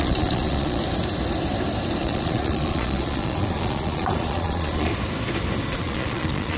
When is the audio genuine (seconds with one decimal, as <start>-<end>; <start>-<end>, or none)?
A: 0.8-2.0; 4.9-5.8